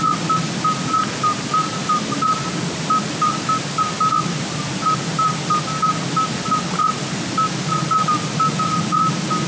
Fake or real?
real